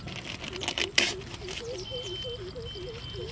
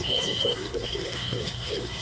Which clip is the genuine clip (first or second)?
first